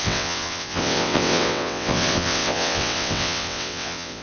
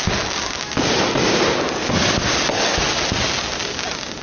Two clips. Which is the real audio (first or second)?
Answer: second